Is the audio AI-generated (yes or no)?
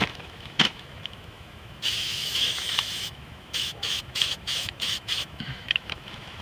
yes